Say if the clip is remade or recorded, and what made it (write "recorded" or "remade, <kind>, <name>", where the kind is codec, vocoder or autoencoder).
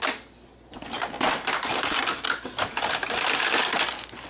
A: recorded